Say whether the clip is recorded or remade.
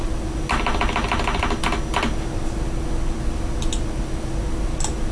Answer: recorded